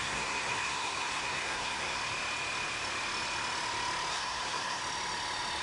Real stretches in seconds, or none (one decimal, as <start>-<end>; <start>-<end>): 2.0-4.1; 4.8-5.6